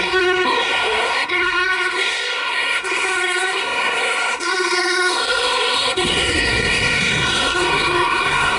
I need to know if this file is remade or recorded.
remade